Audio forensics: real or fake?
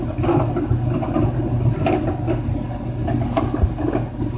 real